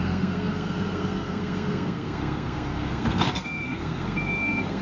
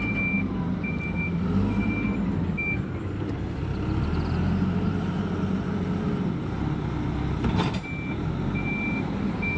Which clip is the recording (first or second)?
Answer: second